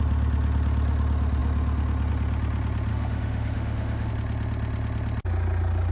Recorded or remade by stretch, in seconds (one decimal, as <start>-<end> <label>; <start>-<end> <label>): 0.0-2.9 recorded; 2.9-4.1 remade; 4.1-5.9 recorded